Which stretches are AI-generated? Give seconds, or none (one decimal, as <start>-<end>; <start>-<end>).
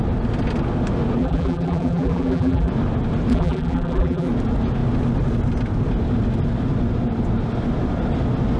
1.2-2.7; 3.3-4.3